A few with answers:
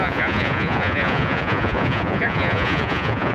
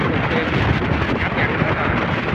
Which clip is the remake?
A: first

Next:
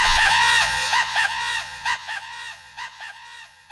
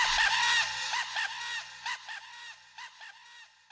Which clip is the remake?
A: first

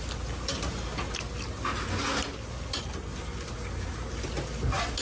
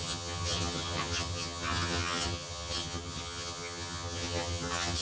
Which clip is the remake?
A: second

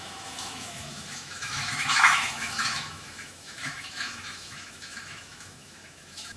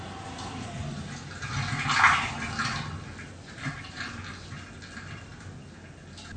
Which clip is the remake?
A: first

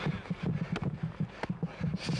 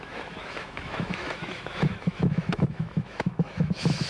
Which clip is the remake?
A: second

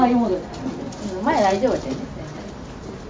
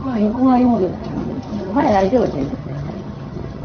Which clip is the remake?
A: second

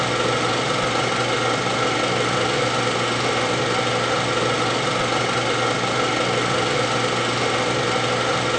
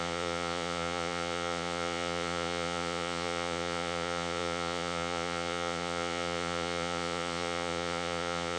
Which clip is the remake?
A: second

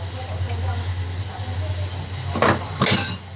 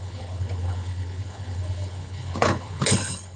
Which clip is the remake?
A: second